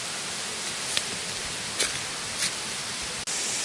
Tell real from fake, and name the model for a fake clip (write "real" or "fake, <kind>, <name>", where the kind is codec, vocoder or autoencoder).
real